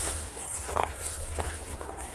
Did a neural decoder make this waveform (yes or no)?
yes